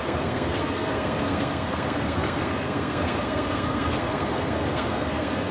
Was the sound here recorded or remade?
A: remade